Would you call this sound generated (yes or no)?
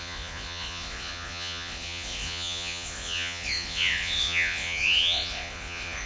yes